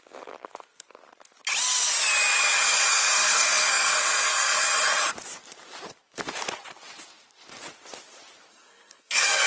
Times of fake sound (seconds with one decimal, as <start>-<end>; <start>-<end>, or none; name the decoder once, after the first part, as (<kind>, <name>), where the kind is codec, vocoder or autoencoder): 2.9-4.6 (codec, SNAC); 8.5-9.5